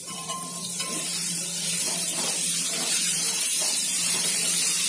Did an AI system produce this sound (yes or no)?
yes